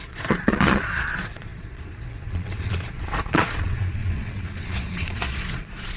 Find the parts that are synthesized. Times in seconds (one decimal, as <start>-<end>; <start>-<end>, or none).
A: 0.0-6.0